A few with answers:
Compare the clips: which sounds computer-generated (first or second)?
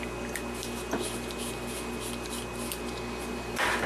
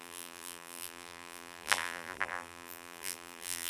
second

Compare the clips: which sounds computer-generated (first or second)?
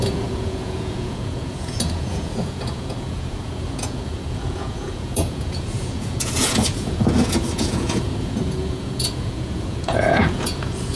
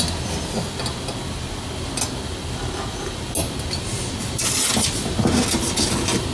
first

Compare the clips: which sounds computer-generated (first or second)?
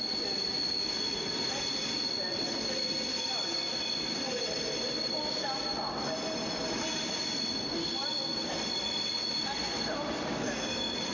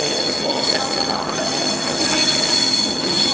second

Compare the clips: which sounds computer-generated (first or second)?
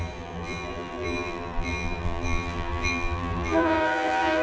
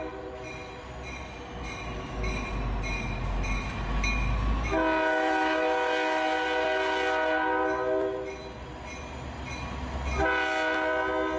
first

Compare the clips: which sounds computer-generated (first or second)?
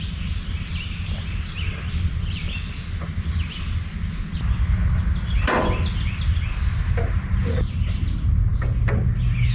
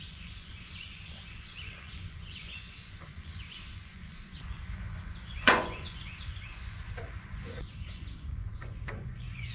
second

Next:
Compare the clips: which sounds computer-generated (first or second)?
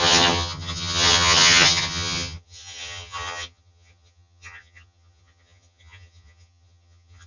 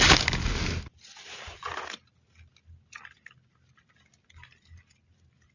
first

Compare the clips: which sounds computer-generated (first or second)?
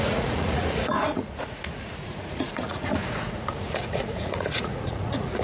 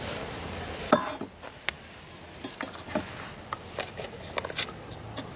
first